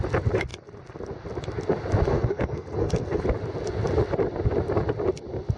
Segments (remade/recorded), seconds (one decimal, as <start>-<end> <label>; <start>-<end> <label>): 0.0-2.1 recorded; 2.1-3.2 remade; 3.2-5.6 recorded